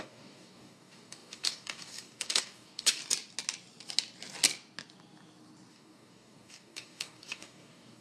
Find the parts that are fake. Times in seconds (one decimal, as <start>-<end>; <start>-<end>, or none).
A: 0.0-3.0; 5.7-8.0